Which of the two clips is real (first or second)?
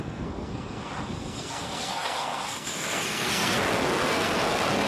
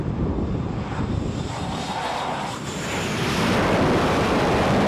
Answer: second